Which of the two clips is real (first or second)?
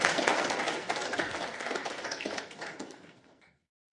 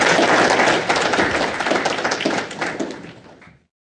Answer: second